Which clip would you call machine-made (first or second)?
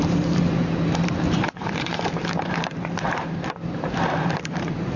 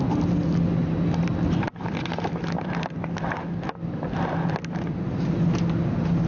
first